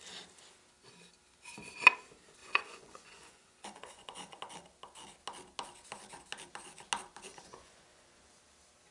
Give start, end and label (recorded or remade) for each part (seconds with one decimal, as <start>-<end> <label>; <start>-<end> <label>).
0.0-2.4 recorded; 2.4-4.4 remade; 4.4-7.3 recorded; 7.3-8.3 remade; 8.3-8.9 recorded